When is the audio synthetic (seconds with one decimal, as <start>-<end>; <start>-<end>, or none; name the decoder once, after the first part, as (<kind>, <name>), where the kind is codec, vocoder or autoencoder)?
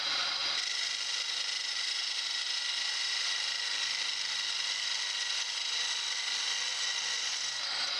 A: none